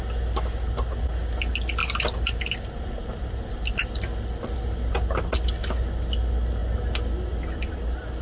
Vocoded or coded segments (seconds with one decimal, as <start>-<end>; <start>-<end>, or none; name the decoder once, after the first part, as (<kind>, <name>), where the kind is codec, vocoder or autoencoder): none